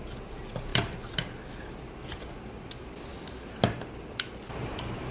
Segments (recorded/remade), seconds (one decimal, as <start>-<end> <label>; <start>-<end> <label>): 0.0-0.7 recorded; 0.7-1.7 remade; 1.7-3.1 recorded; 3.1-4.3 remade; 4.3-5.1 recorded